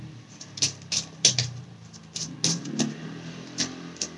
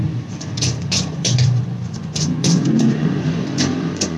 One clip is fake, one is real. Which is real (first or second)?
first